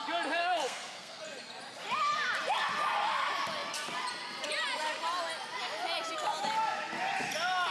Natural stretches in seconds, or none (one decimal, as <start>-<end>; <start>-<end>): 0.0-0.4; 1.2-7.7